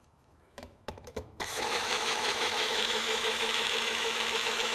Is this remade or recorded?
remade